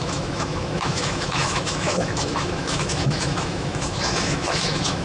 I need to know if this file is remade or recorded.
remade